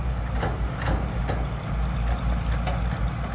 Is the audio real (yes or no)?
yes